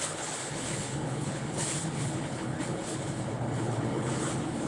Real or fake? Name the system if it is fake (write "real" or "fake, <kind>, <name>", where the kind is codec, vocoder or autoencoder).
fake, codec, HILCodec